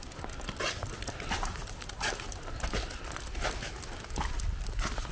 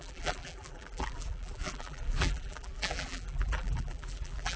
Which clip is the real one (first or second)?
first